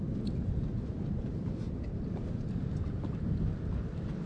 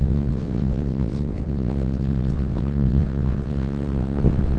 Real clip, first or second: first